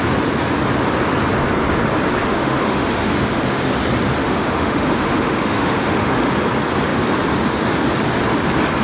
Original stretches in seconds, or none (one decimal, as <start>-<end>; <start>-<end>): 0.0-2.2; 3.7-4.2; 6.3-8.8